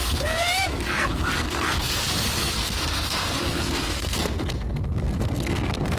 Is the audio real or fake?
fake